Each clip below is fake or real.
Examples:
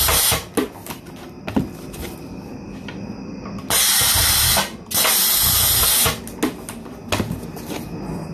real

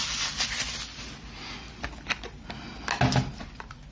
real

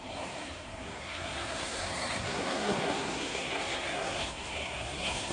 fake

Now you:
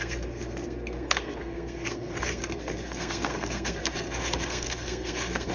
fake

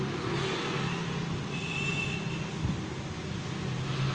real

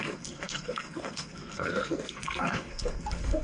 fake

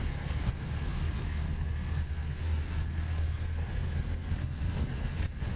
fake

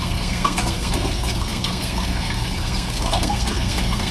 fake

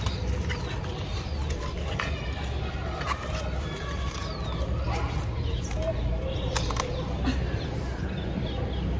real